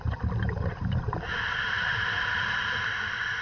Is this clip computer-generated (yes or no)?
yes